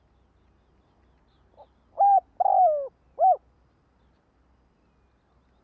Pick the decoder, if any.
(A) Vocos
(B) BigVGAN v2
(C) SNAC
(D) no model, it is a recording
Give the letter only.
D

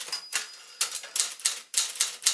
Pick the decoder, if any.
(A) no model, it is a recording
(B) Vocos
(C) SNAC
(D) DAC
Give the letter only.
A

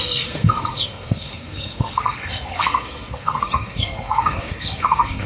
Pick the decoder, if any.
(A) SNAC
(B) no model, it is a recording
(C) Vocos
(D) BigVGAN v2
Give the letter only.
A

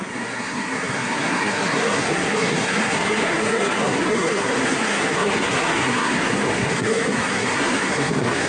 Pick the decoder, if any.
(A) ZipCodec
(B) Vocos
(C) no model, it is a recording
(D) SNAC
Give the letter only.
D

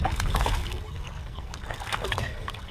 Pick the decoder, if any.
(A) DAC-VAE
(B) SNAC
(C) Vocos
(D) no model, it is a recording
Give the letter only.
B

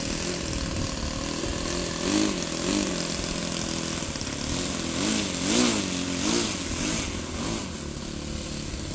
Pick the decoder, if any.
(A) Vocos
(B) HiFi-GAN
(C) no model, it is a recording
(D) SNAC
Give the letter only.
C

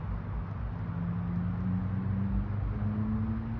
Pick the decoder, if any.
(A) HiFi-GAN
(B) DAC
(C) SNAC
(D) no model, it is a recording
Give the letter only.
D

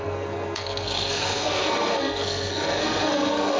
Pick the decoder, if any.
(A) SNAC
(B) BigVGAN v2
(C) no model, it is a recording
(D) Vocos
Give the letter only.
A